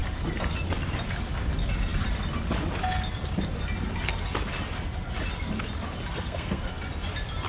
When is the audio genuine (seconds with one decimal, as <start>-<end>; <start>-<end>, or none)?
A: 0.0-6.1; 6.7-7.5